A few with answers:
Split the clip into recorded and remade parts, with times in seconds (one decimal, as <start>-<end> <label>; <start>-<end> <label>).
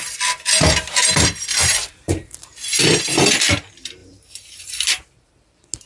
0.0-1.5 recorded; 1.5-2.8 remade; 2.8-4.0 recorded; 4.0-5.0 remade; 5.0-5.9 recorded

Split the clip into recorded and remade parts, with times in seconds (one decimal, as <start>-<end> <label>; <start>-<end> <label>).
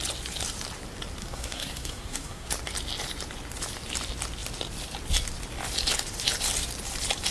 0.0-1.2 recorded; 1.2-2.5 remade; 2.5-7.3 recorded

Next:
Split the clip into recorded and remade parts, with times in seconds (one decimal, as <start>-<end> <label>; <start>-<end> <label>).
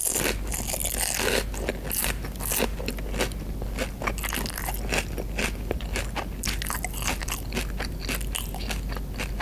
0.0-9.4 recorded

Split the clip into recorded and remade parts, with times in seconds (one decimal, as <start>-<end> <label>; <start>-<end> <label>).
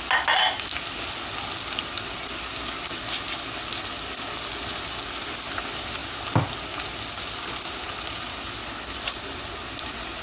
0.0-10.2 recorded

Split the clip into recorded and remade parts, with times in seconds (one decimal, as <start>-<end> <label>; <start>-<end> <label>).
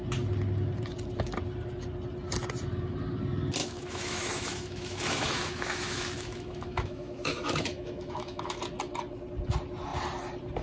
0.0-3.6 recorded; 3.6-8.6 remade; 8.6-10.6 recorded